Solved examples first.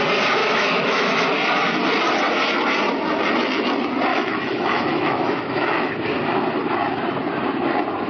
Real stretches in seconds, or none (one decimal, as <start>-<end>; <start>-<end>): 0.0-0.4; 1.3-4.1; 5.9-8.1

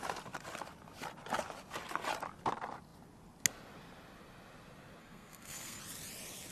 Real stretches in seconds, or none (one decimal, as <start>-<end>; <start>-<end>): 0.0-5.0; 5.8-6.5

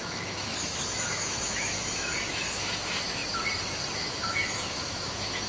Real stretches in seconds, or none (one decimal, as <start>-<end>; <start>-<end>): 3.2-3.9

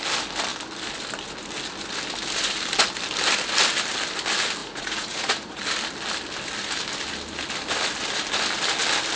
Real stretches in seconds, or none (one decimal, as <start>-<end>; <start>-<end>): 0.0-4.6; 5.6-9.2